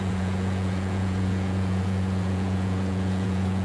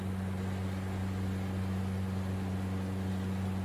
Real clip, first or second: second